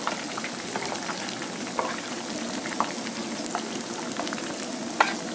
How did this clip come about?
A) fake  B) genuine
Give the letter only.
B